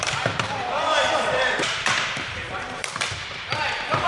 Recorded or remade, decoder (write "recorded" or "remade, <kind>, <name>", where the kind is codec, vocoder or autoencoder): remade, vocoder, BigVGAN v2